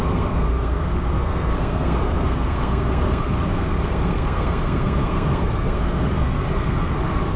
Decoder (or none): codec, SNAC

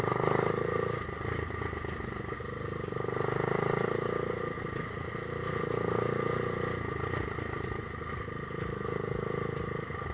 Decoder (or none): none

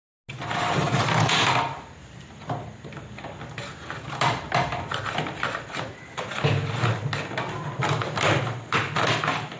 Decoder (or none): none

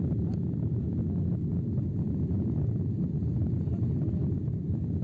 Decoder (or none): none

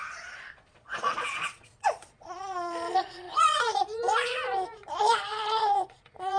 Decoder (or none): vocoder, Vocos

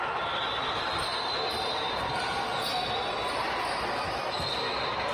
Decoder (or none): none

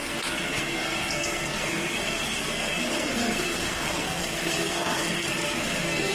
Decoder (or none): codec, SNAC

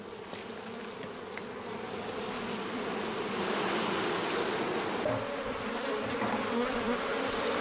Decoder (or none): none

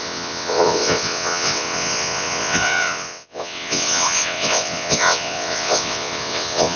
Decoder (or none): vocoder, WaveNeXt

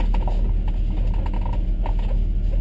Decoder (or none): none